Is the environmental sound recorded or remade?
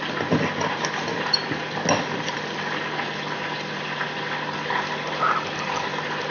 recorded